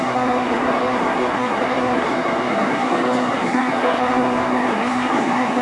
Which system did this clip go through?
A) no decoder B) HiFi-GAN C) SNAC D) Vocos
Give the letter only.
C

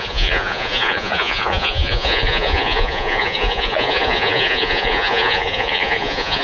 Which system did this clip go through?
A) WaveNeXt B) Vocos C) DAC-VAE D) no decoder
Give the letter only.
B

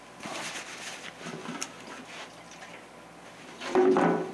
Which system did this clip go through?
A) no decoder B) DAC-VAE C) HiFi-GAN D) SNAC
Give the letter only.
A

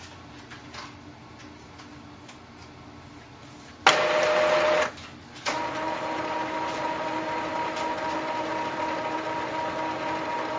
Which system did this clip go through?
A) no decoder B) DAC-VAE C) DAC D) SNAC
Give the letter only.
A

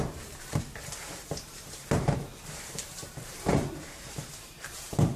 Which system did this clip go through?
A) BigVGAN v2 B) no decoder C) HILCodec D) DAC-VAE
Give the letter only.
A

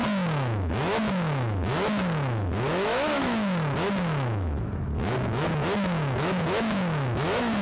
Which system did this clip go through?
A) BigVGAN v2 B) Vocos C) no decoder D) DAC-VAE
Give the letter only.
D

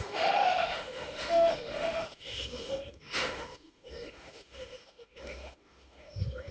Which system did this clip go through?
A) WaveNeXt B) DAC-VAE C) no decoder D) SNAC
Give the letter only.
B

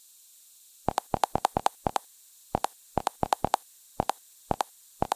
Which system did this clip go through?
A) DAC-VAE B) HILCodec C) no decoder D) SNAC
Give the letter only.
C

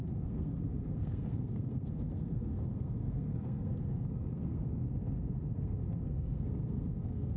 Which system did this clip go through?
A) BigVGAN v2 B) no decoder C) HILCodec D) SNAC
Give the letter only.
D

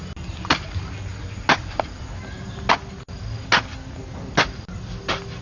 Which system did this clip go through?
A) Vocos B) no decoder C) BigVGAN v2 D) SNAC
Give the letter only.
B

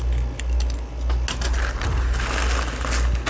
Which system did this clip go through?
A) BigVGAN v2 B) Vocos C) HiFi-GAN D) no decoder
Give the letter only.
D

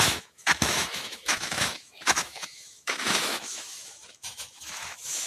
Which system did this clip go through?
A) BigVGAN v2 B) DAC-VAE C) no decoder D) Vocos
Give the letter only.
B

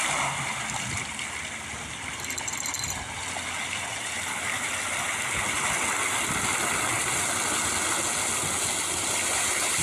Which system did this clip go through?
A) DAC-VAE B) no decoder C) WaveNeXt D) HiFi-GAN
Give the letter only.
B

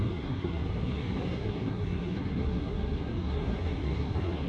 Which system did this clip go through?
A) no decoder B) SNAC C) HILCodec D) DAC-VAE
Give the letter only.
B